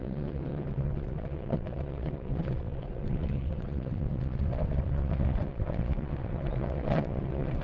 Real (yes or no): no